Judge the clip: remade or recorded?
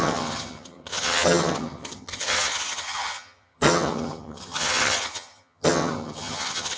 remade